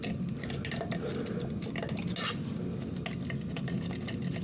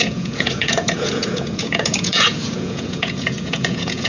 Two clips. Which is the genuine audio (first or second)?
first